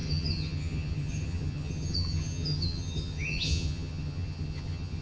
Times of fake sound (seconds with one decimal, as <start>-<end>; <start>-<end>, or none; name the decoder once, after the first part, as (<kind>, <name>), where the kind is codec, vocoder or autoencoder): 0.0-5.0 (vocoder, HiFi-GAN)